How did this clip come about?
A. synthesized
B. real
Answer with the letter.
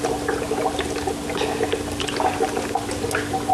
B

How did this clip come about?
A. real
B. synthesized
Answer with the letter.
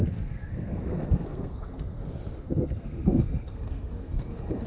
B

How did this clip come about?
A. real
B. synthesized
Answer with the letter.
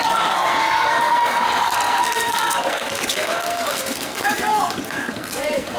B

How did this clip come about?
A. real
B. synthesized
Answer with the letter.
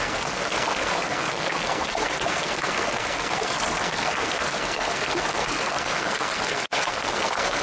B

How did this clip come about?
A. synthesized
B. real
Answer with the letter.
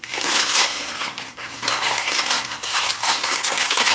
A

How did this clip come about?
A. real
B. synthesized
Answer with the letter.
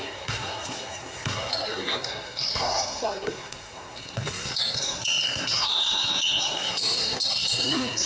B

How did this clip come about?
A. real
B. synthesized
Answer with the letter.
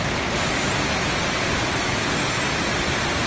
A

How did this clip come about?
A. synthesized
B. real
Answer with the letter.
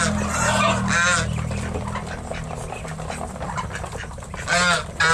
B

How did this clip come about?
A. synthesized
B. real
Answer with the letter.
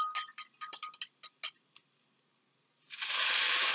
B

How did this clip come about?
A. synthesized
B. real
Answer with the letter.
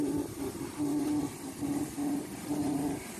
B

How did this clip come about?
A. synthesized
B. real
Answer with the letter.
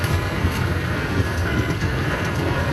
A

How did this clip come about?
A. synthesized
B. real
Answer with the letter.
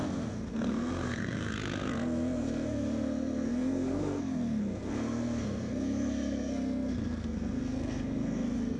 A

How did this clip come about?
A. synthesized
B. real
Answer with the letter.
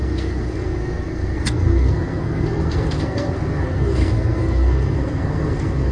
A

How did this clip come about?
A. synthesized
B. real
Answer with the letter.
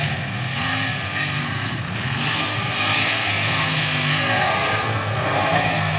A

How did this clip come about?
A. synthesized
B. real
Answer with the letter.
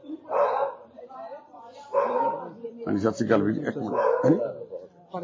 B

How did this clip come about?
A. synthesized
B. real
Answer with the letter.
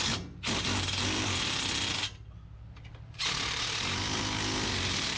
B